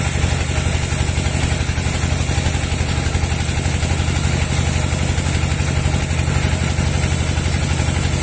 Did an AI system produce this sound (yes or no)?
no